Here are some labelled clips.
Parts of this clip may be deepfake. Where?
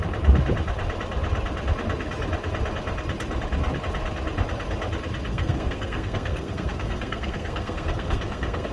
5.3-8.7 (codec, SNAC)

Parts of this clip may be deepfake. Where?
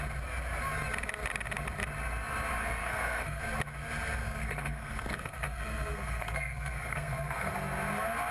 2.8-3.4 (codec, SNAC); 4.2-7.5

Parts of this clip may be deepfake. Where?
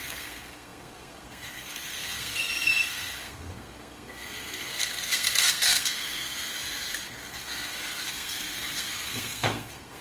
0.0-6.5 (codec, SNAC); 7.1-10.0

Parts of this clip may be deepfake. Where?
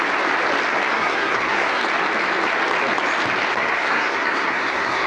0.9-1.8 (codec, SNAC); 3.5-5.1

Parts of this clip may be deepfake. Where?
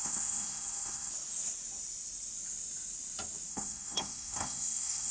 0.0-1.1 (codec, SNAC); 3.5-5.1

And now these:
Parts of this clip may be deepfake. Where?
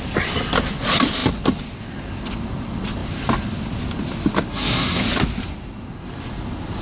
4.5-5.0 (codec, SNAC)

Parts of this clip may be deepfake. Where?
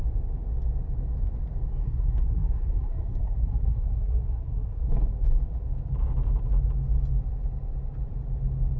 1.8-4.8 (codec, SNAC)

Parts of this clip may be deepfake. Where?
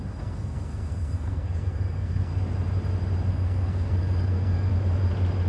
0.0-2.3 (codec, SNAC); 3.3-4.7